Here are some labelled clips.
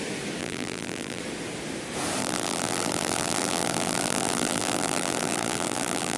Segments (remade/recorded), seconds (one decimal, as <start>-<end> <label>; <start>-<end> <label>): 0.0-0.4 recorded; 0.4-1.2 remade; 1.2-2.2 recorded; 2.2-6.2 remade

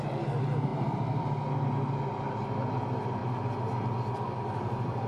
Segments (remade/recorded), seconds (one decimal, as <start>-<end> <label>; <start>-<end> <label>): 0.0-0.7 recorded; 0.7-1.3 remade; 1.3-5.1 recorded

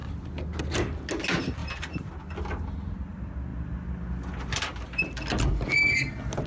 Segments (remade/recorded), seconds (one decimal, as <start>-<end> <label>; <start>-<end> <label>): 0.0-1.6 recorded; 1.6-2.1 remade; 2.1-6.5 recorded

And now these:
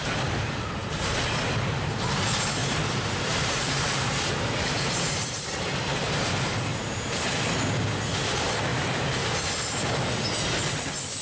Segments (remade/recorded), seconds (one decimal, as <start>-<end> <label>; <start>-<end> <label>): 0.0-2.6 recorded; 2.6-6.0 remade; 6.0-6.7 recorded; 6.7-7.4 remade; 7.4-8.7 recorded; 8.7-9.2 remade; 9.2-11.2 recorded

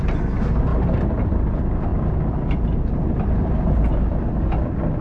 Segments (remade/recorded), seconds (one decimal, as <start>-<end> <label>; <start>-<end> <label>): 0.0-1.9 remade; 1.9-5.0 recorded